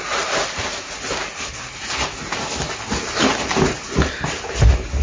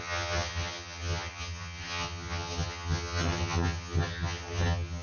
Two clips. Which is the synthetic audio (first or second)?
second